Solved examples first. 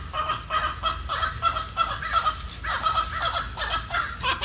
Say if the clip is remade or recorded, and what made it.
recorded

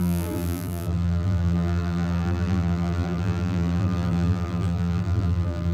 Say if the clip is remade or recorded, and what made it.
remade, vocoder, BigVGAN v2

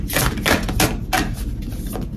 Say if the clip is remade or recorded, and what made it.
recorded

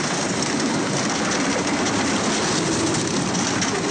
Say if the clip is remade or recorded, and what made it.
recorded